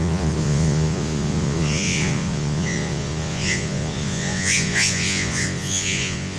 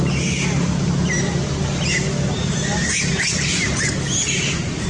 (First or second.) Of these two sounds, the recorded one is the second